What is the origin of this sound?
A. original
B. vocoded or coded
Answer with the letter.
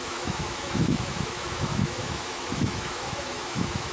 B